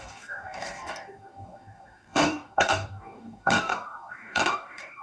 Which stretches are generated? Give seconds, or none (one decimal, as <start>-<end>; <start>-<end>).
0.0-5.0

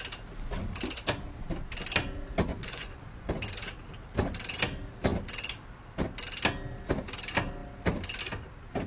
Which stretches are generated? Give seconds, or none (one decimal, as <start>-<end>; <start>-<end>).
2.5-3.3

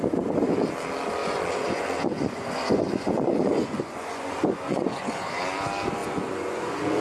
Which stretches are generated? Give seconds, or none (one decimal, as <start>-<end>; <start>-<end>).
1.2-5.4; 6.0-7.0